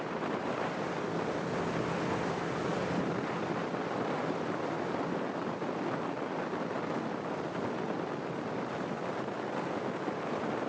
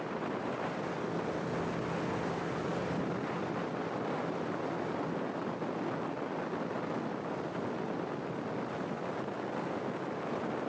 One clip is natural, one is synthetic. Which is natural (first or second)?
second